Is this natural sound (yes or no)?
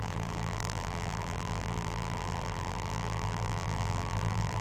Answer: no